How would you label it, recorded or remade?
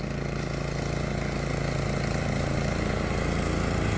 recorded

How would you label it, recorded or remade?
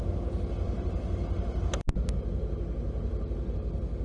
recorded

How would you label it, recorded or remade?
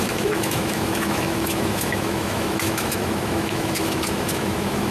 remade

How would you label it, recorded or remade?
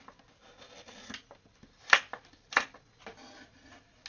recorded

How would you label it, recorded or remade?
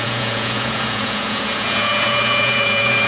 remade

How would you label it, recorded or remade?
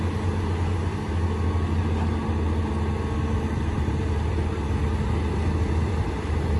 recorded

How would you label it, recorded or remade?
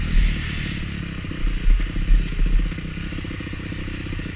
recorded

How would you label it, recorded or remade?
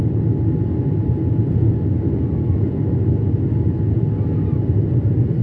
recorded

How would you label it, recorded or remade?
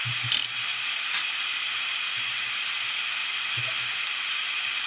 recorded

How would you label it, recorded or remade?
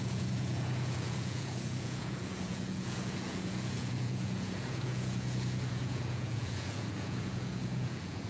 remade